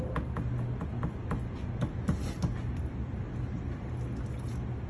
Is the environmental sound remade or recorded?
recorded